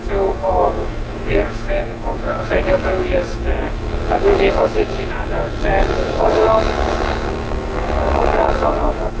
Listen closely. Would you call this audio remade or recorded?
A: remade